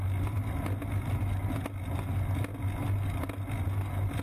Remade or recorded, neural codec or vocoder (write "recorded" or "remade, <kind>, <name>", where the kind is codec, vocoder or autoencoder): recorded